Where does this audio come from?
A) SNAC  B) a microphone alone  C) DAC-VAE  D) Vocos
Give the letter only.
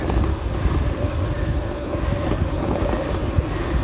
B